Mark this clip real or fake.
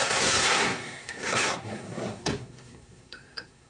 fake